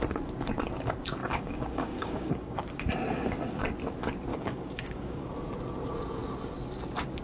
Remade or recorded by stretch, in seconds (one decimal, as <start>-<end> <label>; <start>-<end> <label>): 0.0-1.2 recorded; 1.2-2.6 remade; 2.6-4.3 recorded; 4.3-5.3 remade; 5.3-7.2 recorded